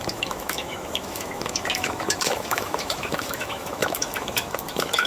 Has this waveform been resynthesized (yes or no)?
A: yes